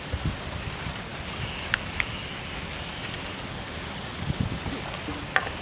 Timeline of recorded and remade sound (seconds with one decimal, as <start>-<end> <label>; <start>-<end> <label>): 0.0-5.6 recorded